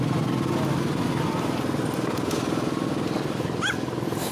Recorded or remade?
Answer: recorded